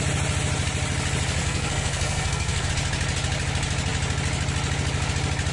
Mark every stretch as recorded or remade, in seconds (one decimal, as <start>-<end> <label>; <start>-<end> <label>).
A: 0.0-1.4 recorded; 1.4-2.7 remade; 2.7-5.5 recorded